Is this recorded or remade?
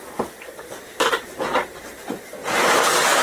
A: recorded